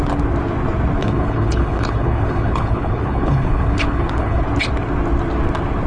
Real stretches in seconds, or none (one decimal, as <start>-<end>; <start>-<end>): 0.0-1.0; 4.4-5.9